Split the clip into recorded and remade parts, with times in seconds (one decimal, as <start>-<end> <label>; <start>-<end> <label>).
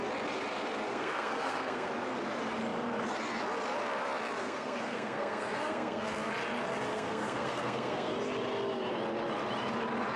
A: 0.0-0.9 recorded; 0.9-1.9 remade; 1.9-4.4 recorded; 4.4-6.3 remade; 6.3-6.9 recorded; 6.9-8.1 remade; 8.1-10.2 recorded